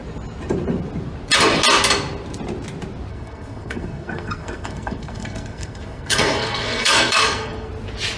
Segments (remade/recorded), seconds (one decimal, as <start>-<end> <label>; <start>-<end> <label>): 0.0-3.1 recorded; 3.1-7.7 remade; 7.7-8.2 recorded